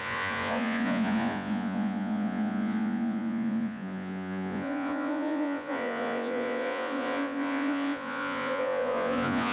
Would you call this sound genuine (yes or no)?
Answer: no